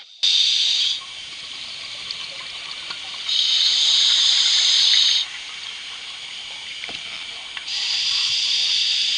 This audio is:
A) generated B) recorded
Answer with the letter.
B